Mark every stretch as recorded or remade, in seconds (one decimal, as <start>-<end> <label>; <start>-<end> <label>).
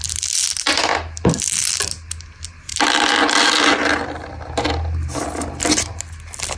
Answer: 0.0-6.6 recorded